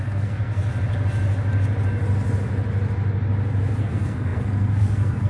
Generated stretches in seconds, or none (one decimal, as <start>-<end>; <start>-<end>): 0.0-0.6; 3.8-5.3